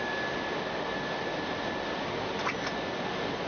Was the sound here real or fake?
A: real